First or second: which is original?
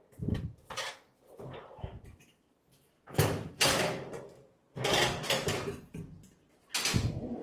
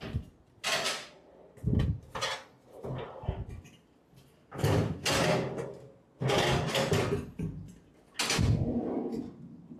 second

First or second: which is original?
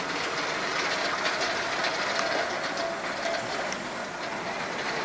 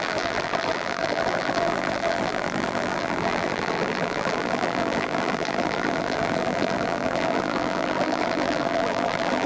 first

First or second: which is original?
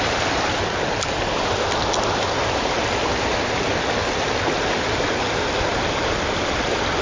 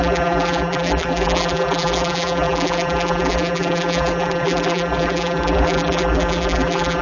first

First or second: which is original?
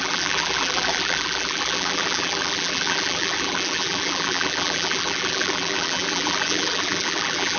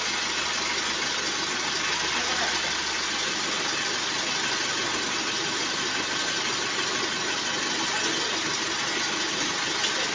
second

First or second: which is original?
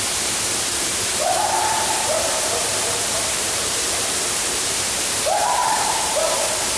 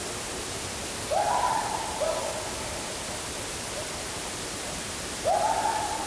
second